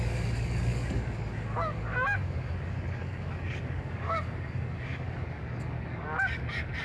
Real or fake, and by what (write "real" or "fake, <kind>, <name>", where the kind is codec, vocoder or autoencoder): fake, codec, DAC